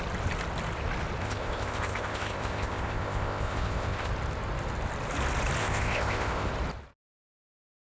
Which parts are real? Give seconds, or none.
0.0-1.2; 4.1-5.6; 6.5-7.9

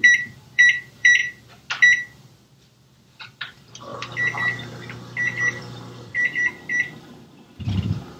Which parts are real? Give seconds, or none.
1.2-3.1; 3.9-5.6

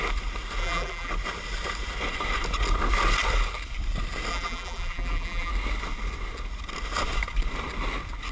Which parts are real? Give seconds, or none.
0.0-0.6; 1.1-4.3; 5.5-8.3

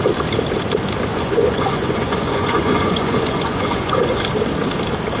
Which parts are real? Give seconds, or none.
0.0-1.1; 4.2-5.2

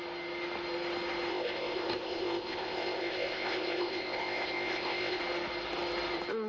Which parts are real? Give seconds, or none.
0.0-1.3; 5.2-6.5

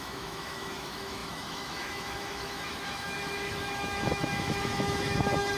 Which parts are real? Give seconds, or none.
none

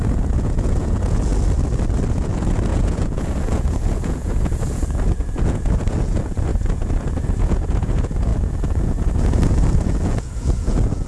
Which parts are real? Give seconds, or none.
1.3-2.1